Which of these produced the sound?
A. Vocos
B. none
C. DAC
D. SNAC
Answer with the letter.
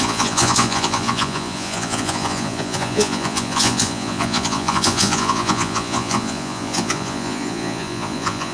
A